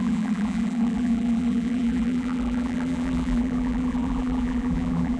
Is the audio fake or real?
fake